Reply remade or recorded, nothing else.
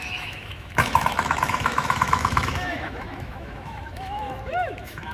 remade